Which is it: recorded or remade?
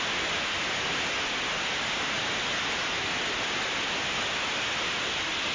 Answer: recorded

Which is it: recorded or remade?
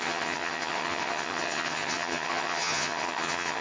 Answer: remade